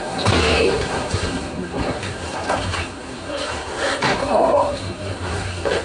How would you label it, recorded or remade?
remade